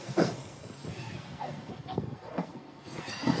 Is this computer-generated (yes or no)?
yes